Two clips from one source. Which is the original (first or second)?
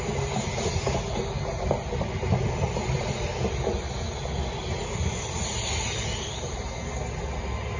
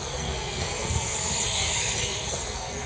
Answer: first